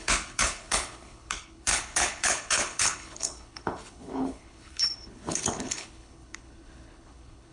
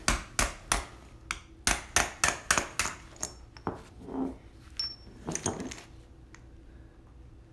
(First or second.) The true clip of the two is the second